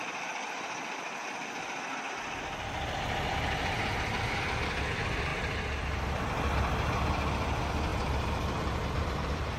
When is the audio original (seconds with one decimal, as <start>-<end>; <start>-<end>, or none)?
0.0-7.9; 8.6-9.6